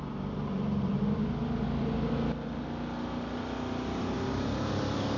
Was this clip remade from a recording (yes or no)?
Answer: no